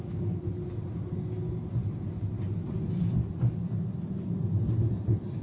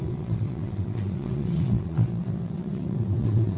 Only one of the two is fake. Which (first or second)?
second